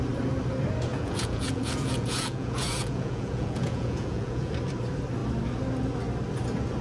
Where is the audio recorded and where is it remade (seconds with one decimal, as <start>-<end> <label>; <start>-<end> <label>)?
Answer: 0.0-0.9 recorded; 0.9-4.5 remade; 4.5-6.8 recorded

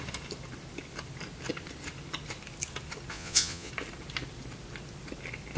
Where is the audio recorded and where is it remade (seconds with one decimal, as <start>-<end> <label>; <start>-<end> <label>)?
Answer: 0.0-3.1 recorded; 3.1-3.7 remade; 3.7-5.6 recorded

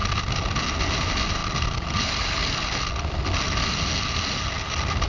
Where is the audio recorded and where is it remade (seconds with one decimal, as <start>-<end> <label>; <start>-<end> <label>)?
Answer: 0.0-5.1 recorded

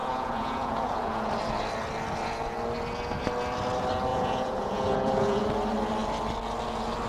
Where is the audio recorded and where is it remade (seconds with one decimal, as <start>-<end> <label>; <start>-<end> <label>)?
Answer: 0.0-1.3 remade; 1.3-4.1 recorded; 4.1-5.4 remade; 5.4-7.1 recorded

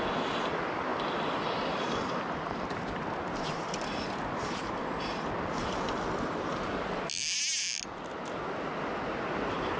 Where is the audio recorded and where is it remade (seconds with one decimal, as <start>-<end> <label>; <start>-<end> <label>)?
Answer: 0.0-9.8 recorded